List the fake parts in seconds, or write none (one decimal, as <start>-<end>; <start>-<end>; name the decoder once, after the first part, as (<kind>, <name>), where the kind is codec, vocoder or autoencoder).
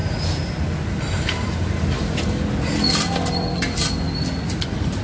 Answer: none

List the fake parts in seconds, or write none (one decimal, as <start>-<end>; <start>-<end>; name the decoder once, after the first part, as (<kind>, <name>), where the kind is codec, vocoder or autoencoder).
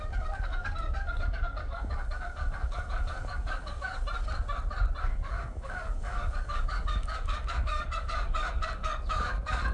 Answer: 0.0-3.9 (codec, DAC); 5.0-9.7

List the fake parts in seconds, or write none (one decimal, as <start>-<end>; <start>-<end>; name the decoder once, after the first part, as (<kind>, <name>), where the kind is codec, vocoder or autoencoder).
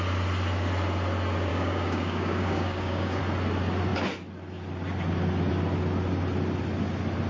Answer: 1.5-3.2 (codec, DAC)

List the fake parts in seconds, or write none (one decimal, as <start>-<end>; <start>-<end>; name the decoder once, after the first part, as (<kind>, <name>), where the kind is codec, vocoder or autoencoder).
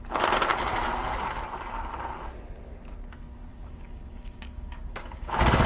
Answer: 3.5-5.3 (codec, DAC)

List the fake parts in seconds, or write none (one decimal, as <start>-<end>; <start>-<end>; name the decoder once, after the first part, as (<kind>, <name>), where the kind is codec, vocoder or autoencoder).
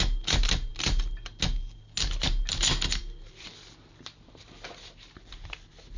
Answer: none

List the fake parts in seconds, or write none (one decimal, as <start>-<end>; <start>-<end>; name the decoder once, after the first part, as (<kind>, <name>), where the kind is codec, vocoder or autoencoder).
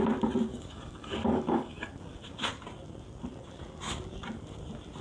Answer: 0.5-1.9 (codec, DAC)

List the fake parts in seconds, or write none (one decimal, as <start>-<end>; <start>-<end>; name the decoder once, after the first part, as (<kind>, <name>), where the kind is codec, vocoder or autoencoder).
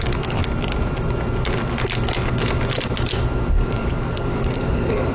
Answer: 0.0-0.4 (codec, DAC); 3.5-5.1